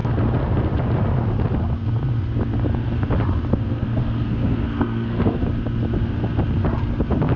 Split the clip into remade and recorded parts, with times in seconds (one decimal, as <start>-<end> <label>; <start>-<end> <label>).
0.0-3.5 recorded; 3.5-5.4 remade; 5.4-7.4 recorded